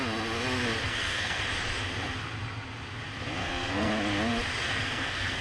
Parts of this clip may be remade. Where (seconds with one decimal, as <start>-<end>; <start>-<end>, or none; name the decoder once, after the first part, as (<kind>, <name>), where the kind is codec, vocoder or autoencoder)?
0.8-1.4 (codec, SNAC); 3.4-3.9; 4.6-5.4